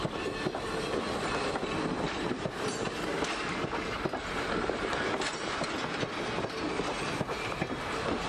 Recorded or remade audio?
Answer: recorded